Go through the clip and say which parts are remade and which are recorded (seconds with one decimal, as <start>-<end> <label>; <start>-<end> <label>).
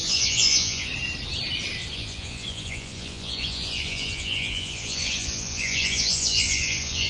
0.0-0.9 remade; 0.9-1.9 recorded; 1.9-7.1 remade